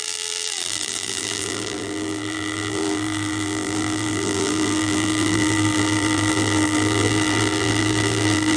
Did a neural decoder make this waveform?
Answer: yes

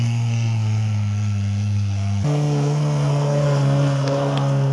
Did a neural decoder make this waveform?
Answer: yes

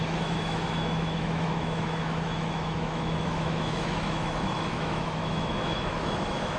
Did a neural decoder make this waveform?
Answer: yes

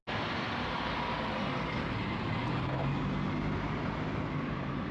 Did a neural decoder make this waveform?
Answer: no